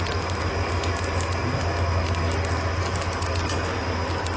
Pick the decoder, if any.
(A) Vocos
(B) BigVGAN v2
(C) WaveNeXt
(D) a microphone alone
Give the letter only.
D